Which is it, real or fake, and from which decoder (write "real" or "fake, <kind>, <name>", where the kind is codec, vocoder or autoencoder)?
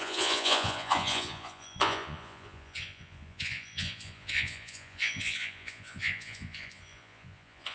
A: fake, vocoder, Vocos